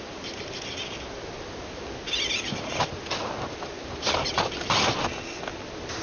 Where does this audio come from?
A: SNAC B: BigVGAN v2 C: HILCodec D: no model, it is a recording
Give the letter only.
D